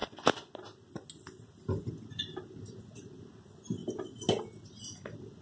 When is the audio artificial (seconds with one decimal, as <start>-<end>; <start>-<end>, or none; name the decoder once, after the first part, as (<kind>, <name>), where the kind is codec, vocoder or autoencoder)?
none

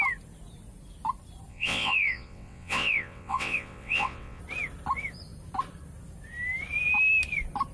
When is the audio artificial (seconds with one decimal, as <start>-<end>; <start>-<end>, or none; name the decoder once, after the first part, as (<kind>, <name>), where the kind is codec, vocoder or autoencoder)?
1.5-4.4 (vocoder, WaveNeXt)

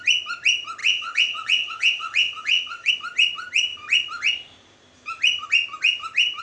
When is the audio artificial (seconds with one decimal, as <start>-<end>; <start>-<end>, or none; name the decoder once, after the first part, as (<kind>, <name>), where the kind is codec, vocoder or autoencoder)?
0.8-2.9 (vocoder, WaveNeXt)